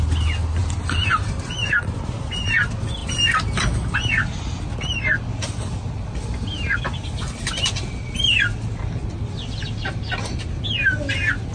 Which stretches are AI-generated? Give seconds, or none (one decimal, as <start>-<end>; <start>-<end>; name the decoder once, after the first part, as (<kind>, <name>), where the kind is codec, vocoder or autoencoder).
none